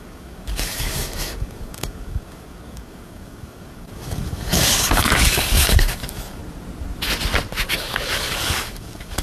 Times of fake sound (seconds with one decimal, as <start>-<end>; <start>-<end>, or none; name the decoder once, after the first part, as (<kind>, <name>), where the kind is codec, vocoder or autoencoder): 0.0-6.4 (codec, DAC); 7.7-9.2